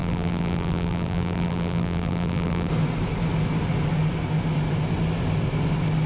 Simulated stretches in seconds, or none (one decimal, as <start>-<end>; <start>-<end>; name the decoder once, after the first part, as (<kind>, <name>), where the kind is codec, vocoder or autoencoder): 0.0-2.7 (vocoder, BigVGAN v2)